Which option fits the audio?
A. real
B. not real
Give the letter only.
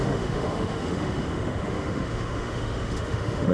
B